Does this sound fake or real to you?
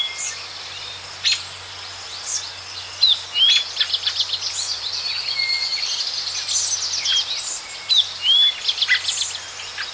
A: real